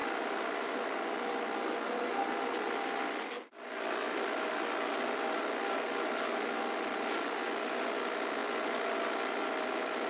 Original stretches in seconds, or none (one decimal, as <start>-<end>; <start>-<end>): 0.0-10.1